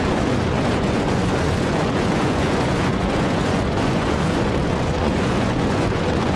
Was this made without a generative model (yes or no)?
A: no